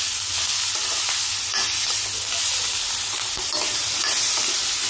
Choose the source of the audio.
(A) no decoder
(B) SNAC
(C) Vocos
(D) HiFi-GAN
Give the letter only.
A